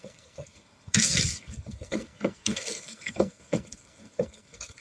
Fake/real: fake